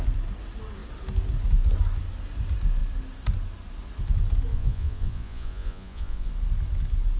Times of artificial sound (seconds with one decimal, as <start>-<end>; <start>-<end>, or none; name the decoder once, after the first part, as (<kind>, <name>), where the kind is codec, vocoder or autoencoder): 4.5-6.3 (vocoder, Vocos)